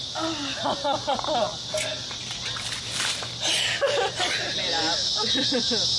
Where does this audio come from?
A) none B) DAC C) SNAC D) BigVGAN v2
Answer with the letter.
A